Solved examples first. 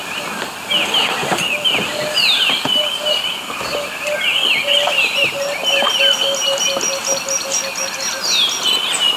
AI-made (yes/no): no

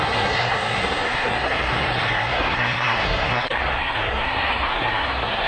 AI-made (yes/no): yes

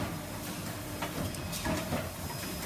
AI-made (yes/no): no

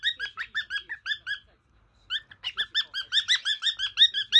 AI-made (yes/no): no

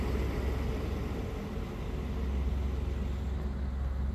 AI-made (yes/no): no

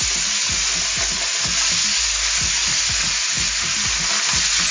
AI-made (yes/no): no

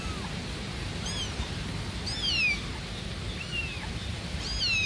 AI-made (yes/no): no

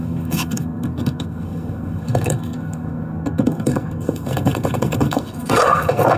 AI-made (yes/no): yes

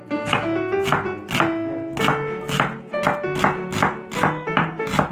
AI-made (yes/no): no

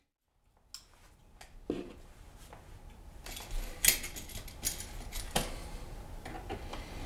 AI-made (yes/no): no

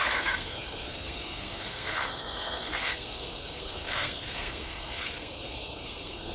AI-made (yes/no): yes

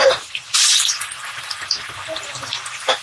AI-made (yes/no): no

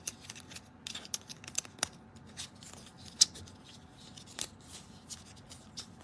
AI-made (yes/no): no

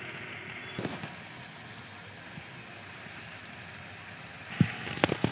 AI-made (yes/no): no